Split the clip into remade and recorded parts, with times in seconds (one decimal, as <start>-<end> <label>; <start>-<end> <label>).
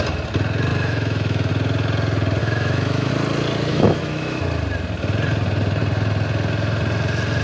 0.0-0.7 recorded; 0.7-1.5 remade; 1.5-2.4 recorded; 2.4-3.1 remade; 3.1-3.7 recorded; 3.7-4.4 remade; 4.4-7.4 recorded